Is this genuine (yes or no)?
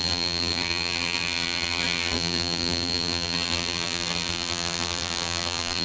no